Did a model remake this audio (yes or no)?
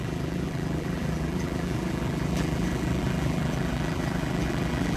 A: yes